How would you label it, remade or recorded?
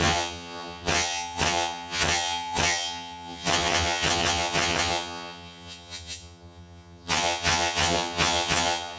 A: remade